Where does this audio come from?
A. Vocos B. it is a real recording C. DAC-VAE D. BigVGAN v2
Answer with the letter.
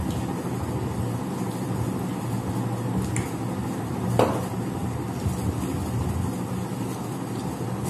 B